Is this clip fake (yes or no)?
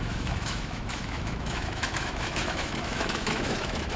yes